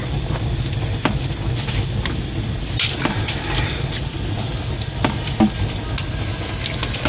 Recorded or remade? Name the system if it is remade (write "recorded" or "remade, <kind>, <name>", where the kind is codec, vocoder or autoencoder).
recorded